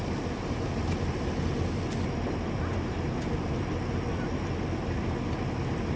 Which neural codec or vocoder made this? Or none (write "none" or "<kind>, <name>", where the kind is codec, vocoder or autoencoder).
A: none